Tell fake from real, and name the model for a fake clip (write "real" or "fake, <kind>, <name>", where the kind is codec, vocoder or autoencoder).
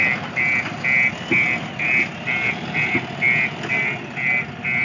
real